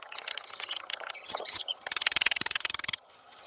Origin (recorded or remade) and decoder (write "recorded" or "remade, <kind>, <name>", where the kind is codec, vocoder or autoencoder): remade, vocoder, HiFi-GAN